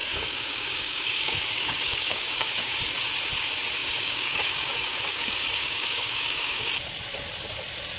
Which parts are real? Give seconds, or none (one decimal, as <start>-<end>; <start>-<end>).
2.8-3.8; 6.7-8.0